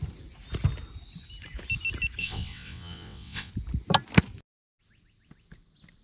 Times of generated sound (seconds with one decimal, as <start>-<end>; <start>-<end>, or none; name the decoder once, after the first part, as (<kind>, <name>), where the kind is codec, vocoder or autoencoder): 2.2-3.5 (vocoder, WaveNeXt)